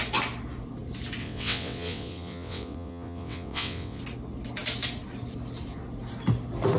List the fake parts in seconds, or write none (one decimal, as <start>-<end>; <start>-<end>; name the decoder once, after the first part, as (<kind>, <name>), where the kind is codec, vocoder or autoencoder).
1.2-4.0 (vocoder, WaveNeXt)